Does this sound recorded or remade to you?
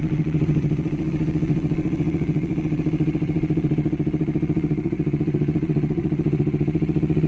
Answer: remade